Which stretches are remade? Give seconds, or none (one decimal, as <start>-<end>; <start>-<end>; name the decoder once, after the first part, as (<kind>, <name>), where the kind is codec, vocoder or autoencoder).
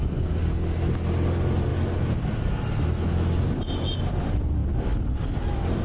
none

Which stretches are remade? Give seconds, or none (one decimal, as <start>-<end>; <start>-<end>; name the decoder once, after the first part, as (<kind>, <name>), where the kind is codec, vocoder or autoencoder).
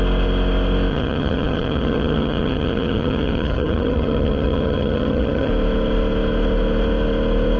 0.9-5.5 (vocoder, HiFi-GAN)